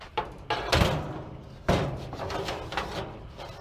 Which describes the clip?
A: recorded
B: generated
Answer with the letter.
A